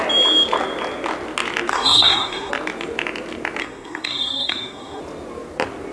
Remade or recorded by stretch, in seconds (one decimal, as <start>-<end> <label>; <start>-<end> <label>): 0.0-1.7 recorded; 1.7-2.5 remade; 2.5-3.6 recorded; 3.6-5.0 remade; 5.0-5.9 recorded